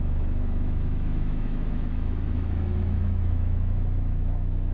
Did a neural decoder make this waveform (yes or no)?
yes